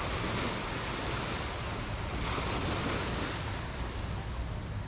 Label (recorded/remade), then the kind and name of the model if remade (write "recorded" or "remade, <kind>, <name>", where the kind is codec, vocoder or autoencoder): recorded